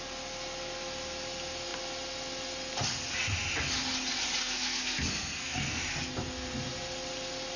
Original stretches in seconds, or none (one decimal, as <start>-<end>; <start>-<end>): 0.0-4.4; 5.8-7.6